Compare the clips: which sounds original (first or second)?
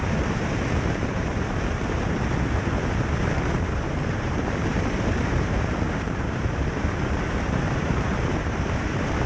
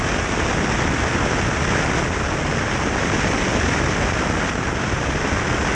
second